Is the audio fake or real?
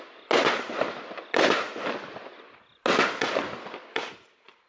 real